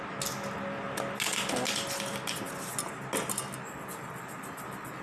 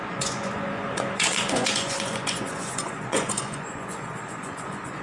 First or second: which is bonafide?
first